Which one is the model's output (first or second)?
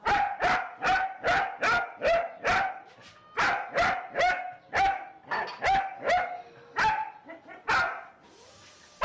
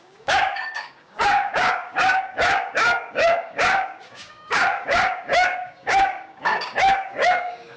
second